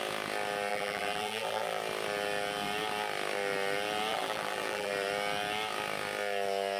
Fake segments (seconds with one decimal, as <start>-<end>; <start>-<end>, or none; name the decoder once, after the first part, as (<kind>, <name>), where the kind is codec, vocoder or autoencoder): 0.7-1.8 (vocoder, BigVGAN v2); 4.1-4.9